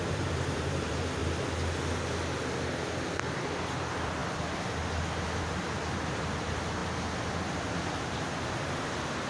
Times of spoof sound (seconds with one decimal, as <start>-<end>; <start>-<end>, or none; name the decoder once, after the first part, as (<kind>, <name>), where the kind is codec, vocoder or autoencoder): 0.0-1.2 (vocoder, BigVGAN v2); 3.6-4.2; 5.4-6.8; 7.4-9.3